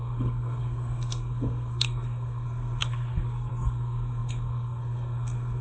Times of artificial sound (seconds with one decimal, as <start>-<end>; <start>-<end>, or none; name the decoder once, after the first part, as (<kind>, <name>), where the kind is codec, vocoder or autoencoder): 0.0-5.6 (codec, SNAC)